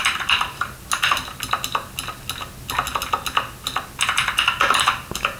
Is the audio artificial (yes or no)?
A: no